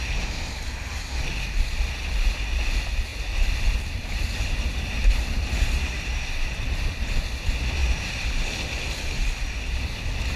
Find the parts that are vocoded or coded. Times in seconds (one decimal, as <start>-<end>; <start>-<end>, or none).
3.1-6.9; 7.8-8.4